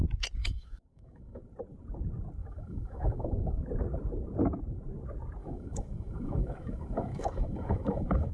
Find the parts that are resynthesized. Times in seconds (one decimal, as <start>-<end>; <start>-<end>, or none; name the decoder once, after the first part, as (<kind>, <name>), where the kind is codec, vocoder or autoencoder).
0.4-1.4 (autoencoder, DAC-VAE); 2.4-3.6; 5.4-8.3